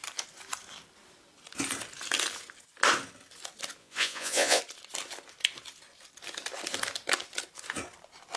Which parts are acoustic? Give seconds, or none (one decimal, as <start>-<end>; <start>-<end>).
0.0-3.8; 4.6-8.4